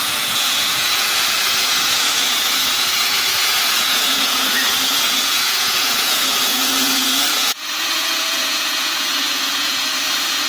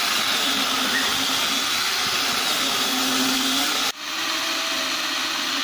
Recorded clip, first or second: second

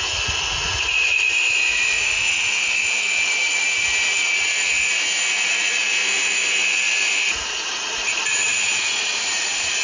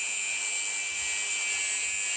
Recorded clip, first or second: second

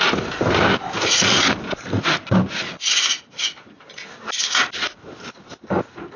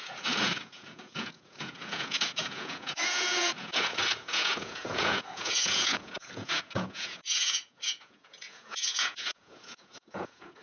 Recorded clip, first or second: first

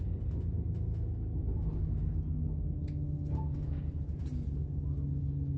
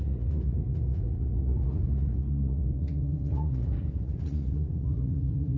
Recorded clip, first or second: first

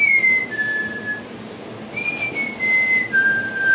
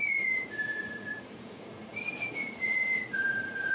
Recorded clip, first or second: first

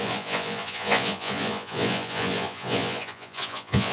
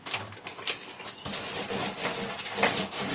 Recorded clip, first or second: second